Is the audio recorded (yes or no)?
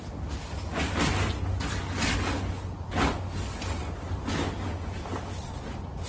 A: yes